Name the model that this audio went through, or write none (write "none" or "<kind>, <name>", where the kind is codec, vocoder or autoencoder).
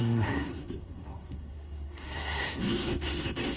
codec, SNAC